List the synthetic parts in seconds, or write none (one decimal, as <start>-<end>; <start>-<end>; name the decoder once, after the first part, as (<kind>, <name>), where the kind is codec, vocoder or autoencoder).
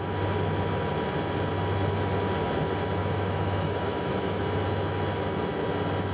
3.0-4.4 (autoencoder, DAC-VAE)